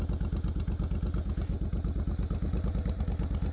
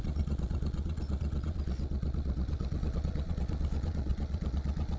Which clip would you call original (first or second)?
first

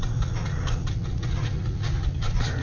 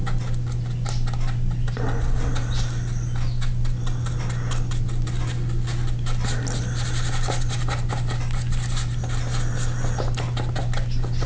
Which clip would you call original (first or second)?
second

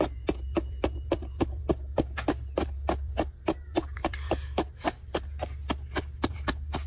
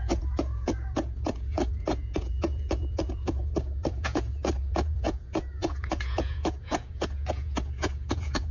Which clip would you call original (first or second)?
first